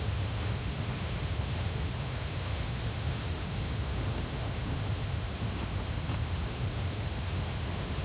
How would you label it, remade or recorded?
remade